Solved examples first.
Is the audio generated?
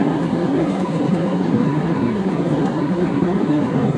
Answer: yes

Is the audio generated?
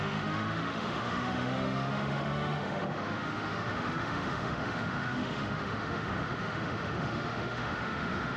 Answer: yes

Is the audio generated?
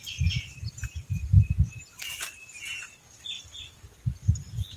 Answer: no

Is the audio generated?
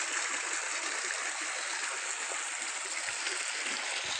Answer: no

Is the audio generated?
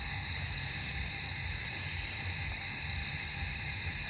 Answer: yes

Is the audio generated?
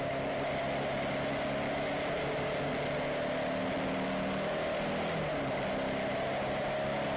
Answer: no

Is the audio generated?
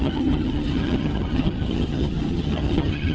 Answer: yes